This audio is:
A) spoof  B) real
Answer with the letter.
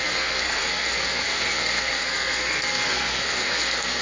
A